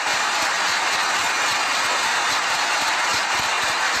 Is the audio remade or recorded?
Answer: recorded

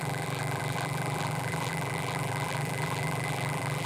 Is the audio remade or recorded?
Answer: remade